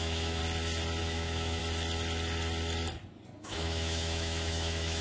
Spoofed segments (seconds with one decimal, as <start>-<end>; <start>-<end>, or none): 0.0-0.4; 1.0-1.6; 3.4-5.0